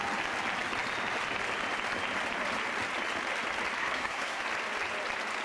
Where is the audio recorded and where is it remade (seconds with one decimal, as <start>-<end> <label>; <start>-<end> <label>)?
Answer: 0.0-3.8 recorded; 3.8-4.4 remade; 4.4-5.4 recorded